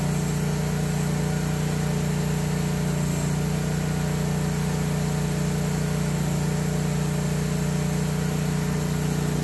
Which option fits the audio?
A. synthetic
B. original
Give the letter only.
B